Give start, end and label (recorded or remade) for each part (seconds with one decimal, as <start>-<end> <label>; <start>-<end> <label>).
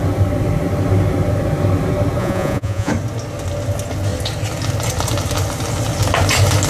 0.0-2.2 recorded; 2.2-2.9 remade; 2.9-6.7 recorded